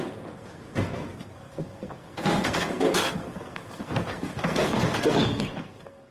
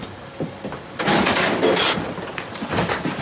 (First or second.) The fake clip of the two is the first